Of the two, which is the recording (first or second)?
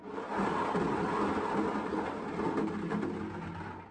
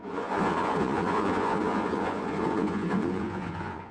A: first